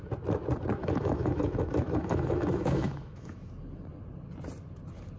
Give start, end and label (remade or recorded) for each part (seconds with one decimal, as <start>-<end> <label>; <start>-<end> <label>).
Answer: 0.0-0.8 recorded; 0.8-3.5 remade; 3.5-5.2 recorded